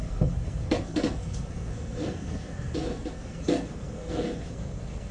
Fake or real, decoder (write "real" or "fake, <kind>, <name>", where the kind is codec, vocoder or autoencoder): fake, codec, SNAC